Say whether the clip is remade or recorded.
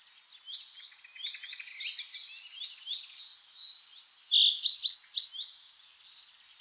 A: recorded